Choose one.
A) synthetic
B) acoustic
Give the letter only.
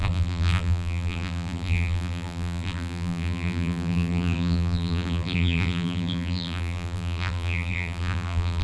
A